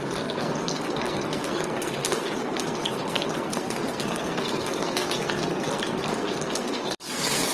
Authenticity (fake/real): fake